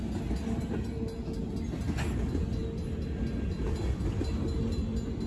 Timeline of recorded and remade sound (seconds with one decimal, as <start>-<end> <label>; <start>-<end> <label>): 0.0-5.3 recorded